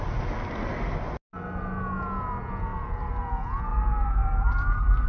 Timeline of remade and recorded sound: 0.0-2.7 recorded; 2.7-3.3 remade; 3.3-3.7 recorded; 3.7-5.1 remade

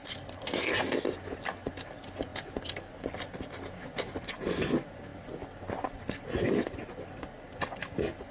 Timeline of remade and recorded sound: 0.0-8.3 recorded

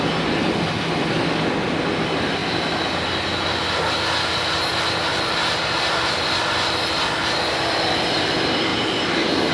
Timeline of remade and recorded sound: 0.0-8.7 recorded; 8.7-9.5 remade

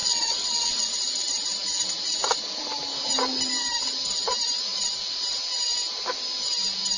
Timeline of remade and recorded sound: 0.0-0.8 remade; 0.8-7.0 recorded